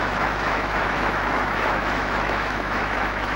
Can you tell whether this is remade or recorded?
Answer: remade